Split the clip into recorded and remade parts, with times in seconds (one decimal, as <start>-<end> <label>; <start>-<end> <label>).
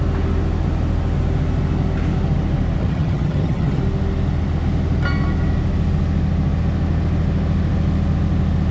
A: 0.0-2.8 recorded; 2.8-3.8 remade; 3.8-8.7 recorded